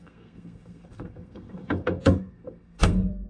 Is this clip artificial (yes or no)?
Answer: yes